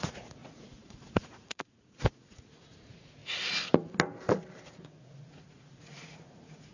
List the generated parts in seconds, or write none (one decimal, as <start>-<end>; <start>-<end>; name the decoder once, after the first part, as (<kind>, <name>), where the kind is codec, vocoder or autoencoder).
0.0-3.2 (vocoder, Vocos); 4.8-6.7